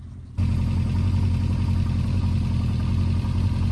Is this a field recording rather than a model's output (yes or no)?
yes